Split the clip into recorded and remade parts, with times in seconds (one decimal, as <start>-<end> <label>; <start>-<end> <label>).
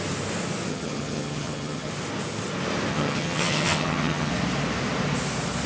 0.0-0.7 recorded; 0.7-1.9 remade; 1.9-2.9 recorded; 2.9-4.3 remade; 4.3-5.7 recorded